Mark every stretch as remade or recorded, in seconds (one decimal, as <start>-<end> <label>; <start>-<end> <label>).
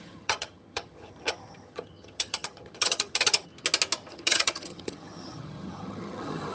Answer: 0.0-3.5 remade; 3.5-4.1 recorded; 4.1-6.5 remade